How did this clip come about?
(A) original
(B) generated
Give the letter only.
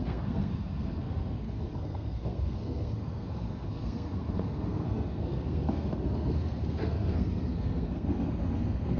B